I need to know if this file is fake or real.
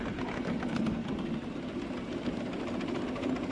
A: real